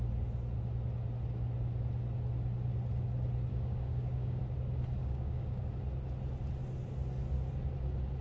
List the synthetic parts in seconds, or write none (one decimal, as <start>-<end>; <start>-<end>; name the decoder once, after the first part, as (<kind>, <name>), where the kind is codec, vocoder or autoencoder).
3.5-4.4 (codec, DAC); 5.0-5.7